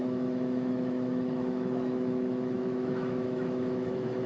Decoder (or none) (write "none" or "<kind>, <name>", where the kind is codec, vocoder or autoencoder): autoencoder, DAC-VAE